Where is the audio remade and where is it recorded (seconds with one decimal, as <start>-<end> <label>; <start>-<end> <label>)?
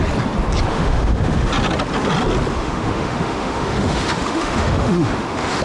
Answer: 0.0-0.7 recorded; 0.7-1.5 remade; 1.5-2.5 recorded; 2.5-5.6 remade